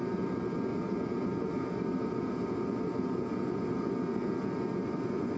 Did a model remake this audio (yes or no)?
no